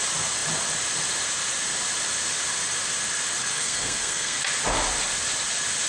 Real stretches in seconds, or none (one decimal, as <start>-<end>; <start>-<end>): 0.0-3.4; 4.4-5.9